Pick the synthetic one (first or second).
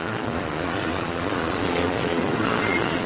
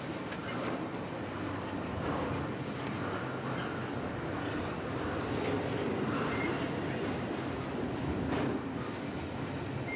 first